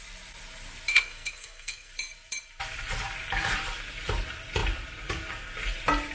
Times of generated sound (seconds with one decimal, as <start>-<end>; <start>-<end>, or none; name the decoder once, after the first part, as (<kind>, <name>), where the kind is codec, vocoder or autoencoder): 0.9-1.9 (codec, SNAC)